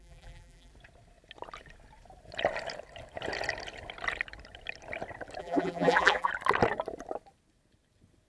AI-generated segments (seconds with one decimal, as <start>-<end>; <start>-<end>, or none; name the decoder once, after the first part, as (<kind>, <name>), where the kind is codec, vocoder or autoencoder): 0.0-0.7 (vocoder, BigVGAN v2); 5.4-6.3